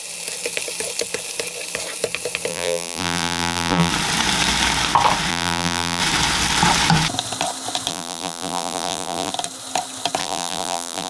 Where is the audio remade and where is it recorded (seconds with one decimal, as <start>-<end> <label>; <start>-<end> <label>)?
0.0-2.5 recorded; 2.5-3.9 remade; 3.9-5.3 recorded; 5.3-6.0 remade; 6.0-7.9 recorded; 7.9-9.3 remade; 9.3-10.2 recorded; 10.2-11.1 remade